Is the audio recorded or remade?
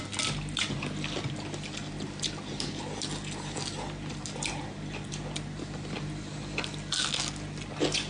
recorded